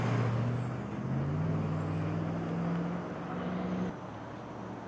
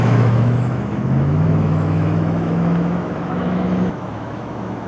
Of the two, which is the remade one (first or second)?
second